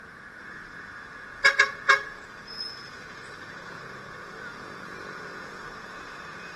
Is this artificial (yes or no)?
yes